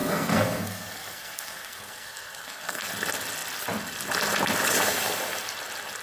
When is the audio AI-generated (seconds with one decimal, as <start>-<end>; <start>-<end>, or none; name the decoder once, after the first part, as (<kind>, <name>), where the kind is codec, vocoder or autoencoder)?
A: 0.0-2.9 (codec, SNAC)